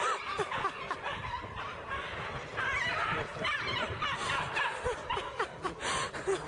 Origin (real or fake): real